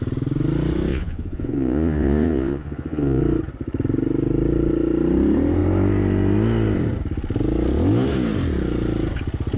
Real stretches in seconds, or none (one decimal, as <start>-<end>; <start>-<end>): 0.0-0.9; 3.2-9.6